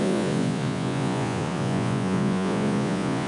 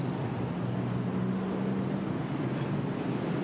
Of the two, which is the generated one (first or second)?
first